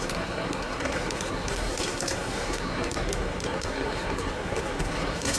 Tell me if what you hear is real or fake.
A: fake